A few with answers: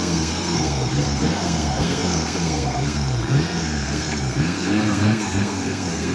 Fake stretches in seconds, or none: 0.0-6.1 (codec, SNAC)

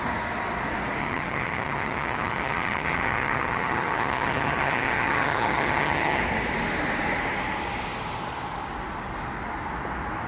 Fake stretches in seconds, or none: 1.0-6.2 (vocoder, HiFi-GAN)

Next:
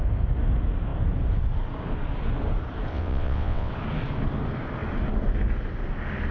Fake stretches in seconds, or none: 2.9-3.7 (vocoder, WaveNeXt)